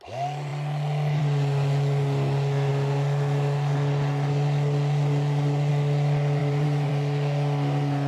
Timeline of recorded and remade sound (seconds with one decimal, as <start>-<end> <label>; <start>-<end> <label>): 0.0-6.4 recorded; 6.4-6.9 remade; 6.9-8.1 recorded